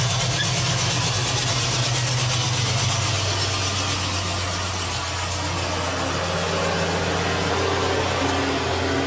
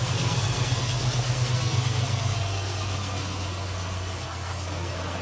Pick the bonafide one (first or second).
first